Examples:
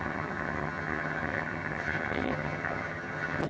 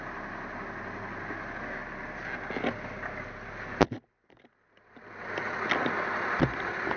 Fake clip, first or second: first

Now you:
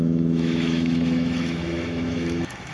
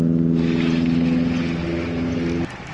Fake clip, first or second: first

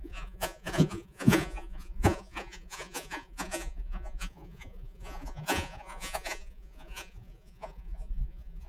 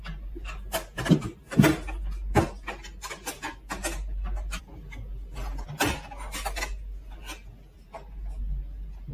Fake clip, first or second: first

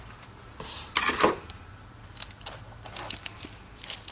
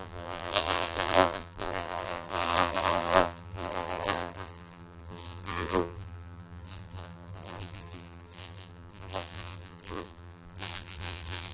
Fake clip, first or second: second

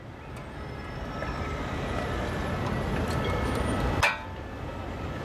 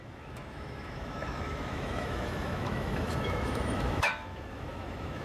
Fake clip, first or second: second